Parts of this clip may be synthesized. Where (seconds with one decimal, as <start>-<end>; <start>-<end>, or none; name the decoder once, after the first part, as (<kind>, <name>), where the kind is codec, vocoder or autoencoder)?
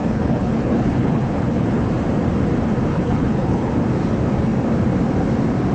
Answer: 0.0-1.8 (codec, HILCodec); 2.9-3.7